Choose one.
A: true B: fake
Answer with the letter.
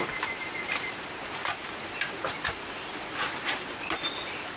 A